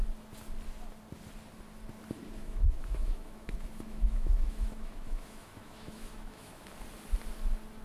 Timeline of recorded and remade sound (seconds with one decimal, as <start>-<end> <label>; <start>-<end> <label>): 0.0-2.4 recorded; 2.4-6.7 remade; 6.7-7.8 recorded